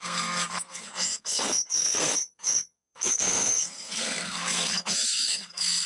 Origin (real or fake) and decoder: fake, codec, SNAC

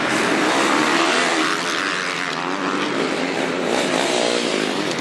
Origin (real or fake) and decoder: real